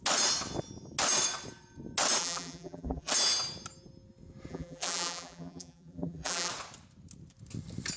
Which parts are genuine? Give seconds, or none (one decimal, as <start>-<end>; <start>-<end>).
0.0-2.2; 3.1-4.5; 6.5-8.0